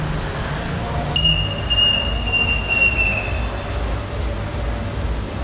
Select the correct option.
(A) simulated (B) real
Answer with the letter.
B